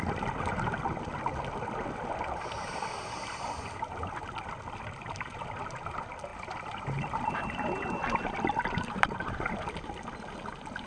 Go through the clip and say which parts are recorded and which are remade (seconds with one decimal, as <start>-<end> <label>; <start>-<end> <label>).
0.0-10.9 recorded

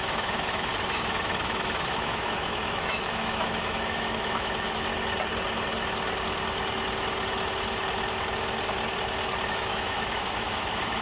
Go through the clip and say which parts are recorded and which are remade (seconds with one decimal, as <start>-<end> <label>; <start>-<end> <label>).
0.0-4.9 remade; 4.9-9.5 recorded; 9.5-11.0 remade

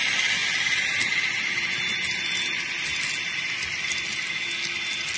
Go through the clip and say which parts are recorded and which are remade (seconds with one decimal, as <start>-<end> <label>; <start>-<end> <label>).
0.0-5.2 recorded

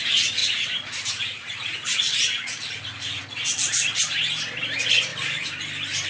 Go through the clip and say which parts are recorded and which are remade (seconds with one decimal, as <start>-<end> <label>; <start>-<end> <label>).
0.0-0.4 recorded; 0.4-3.2 remade; 3.2-5.1 recorded; 5.1-6.1 remade

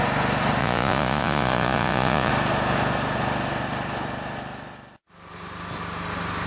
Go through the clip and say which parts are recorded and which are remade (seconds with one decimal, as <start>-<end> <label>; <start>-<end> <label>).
0.0-0.6 recorded; 0.6-2.3 remade; 2.3-6.5 recorded